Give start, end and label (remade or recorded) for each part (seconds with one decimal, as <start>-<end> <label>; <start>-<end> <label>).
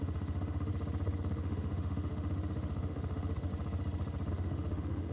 0.0-0.7 remade; 0.7-1.2 recorded; 1.2-3.5 remade; 3.5-4.3 recorded; 4.3-5.1 remade